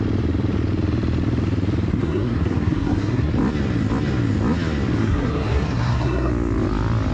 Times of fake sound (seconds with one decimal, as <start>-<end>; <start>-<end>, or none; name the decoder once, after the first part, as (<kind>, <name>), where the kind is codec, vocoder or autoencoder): 1.9-3.3 (codec, SNAC); 5.0-6.3